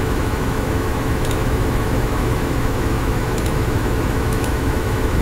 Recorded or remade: remade